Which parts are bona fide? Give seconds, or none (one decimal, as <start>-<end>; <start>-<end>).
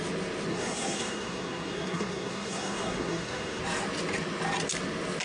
0.0-0.5; 3.6-5.2